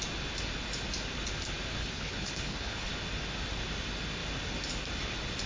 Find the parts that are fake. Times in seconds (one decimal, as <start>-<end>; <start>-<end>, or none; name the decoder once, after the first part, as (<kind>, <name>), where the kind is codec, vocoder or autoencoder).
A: 1.8-2.9 (codec, HILCodec)